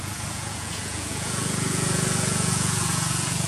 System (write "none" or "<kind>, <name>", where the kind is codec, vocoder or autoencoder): vocoder, Vocos